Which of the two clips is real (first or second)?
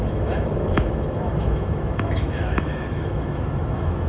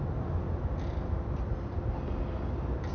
second